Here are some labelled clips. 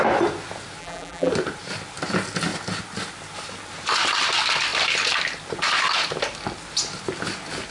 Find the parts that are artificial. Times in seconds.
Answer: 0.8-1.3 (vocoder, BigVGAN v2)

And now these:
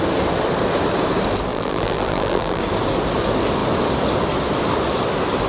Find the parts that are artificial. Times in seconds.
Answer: 1.5-2.6 (vocoder, BigVGAN v2)

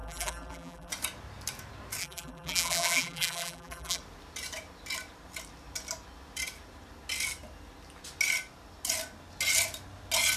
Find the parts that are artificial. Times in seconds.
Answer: 0.0-0.9 (vocoder, BigVGAN v2); 2.0-4.0

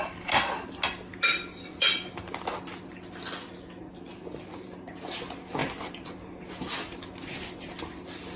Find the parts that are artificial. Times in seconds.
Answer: 4.1-4.9 (vocoder, BigVGAN v2); 5.6-6.1

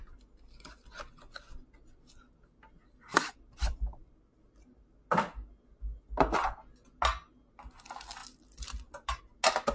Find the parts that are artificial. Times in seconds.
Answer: 3.1-4.1 (vocoder, BigVGAN v2); 8.2-9.2

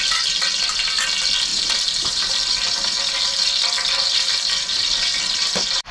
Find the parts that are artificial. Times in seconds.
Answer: 1.5-2.3 (vocoder, BigVGAN v2)